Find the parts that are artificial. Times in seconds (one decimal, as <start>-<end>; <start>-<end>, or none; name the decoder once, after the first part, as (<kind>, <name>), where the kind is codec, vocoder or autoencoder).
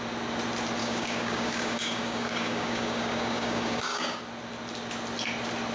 0.8-4.2 (codec, DAC)